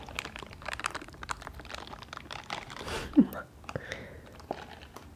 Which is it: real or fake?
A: real